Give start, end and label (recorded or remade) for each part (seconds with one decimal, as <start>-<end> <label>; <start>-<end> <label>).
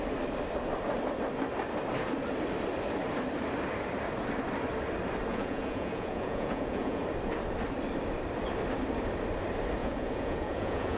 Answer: 0.0-5.3 recorded; 5.3-7.0 remade; 7.0-9.8 recorded; 9.8-11.0 remade